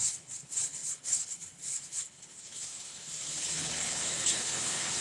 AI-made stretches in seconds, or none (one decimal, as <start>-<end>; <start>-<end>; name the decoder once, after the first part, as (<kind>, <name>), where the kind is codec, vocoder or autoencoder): 0.0-5.0 (codec, HILCodec)